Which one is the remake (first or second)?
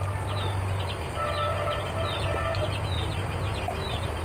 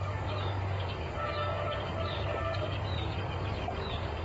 second